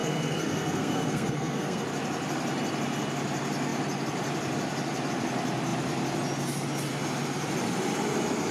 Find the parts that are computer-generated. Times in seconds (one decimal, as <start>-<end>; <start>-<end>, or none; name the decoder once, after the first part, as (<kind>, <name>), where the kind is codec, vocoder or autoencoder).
0.0-1.8 (codec, SNAC)